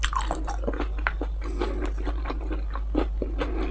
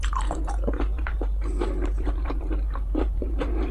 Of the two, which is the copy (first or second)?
second